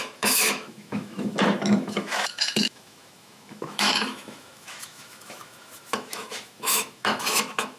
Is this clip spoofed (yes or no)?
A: yes